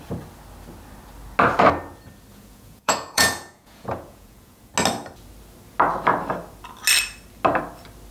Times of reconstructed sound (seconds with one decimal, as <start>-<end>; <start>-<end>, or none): 2.3-4.7